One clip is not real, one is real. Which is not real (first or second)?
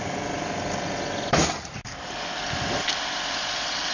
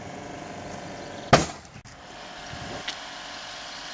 first